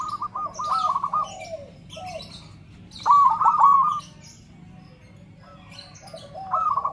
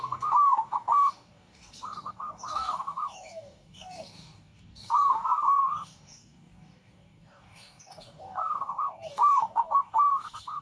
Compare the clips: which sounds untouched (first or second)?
first